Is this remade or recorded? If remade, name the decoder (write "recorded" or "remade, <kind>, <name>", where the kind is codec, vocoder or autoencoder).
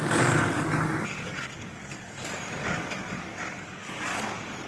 remade, codec, DAC